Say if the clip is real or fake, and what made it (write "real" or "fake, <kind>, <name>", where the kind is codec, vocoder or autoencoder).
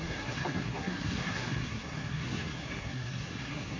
fake, codec, SNAC